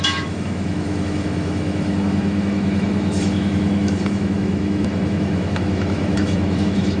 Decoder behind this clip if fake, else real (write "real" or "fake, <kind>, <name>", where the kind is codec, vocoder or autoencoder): fake, autoencoder, DAC-VAE